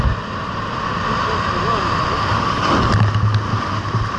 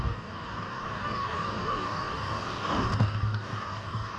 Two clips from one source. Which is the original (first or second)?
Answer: first